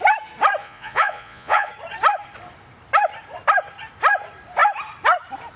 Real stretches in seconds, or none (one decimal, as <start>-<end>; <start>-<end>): 0.0-0.6; 1.7-5.6